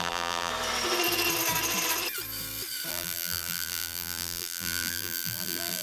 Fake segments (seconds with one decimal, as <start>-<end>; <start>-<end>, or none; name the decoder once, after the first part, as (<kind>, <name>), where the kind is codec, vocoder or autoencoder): 0.0-0.5 (vocoder, BigVGAN v2); 2.9-5.8

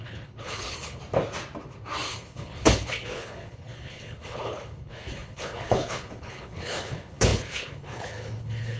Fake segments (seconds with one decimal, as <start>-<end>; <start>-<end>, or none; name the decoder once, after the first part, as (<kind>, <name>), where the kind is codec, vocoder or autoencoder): 0.0-1.0 (codec, HILCodec); 2.1-8.8